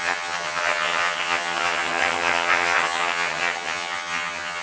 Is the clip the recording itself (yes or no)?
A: no